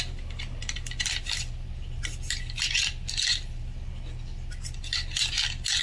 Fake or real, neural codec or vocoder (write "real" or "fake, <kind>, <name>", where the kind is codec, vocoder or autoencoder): real